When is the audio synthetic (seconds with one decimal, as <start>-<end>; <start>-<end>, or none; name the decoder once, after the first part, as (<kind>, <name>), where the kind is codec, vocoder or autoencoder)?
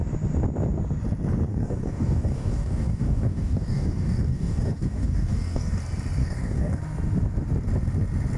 1.5-5.8 (codec, DAC); 6.2-6.8